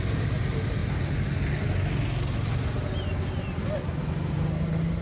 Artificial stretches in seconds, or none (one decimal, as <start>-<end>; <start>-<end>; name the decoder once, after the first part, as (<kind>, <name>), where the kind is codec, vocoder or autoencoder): none